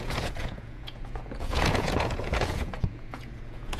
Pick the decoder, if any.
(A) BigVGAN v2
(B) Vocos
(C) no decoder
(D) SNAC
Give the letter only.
B